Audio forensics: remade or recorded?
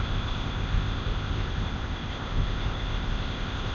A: remade